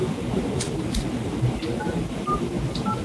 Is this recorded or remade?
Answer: recorded